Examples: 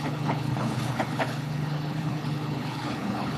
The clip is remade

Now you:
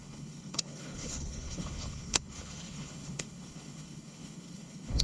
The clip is remade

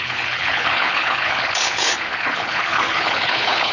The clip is remade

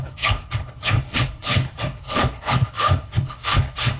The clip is remade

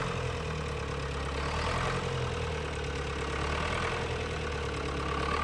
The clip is recorded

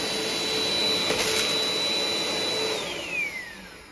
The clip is recorded